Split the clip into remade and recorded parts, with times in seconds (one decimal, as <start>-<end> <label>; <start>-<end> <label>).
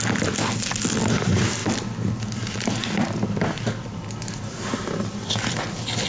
0.0-6.1 recorded